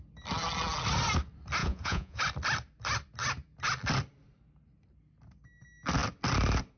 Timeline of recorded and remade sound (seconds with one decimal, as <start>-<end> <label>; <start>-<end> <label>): 0.0-1.6 recorded; 1.6-2.2 remade; 2.2-6.8 recorded